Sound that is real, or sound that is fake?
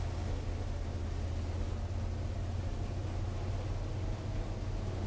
real